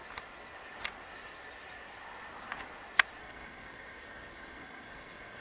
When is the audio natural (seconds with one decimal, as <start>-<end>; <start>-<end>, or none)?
0.0-3.2